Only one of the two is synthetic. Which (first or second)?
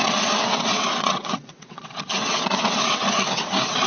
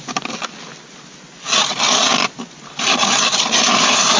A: first